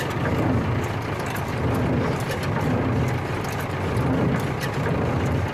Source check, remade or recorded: recorded